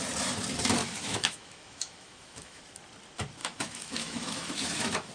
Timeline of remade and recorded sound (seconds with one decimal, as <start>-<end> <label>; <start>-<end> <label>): 0.0-0.8 recorded; 0.8-2.6 remade; 2.6-3.4 recorded; 3.4-5.1 remade